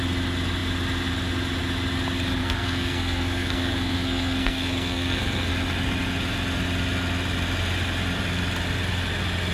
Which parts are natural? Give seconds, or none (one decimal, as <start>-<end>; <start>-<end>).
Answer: 0.0-2.4; 5.5-9.5